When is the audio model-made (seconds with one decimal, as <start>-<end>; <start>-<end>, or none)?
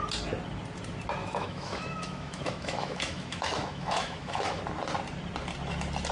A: 1.2-4.6